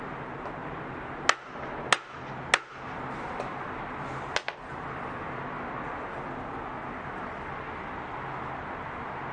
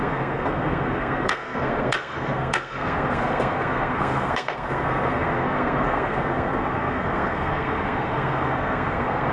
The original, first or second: first